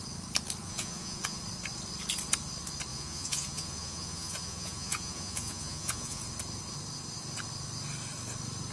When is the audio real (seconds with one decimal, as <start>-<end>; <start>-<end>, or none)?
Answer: 0.0-0.6; 1.4-2.9; 6.2-8.7